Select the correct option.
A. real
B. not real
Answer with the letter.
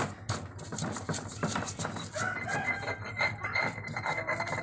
A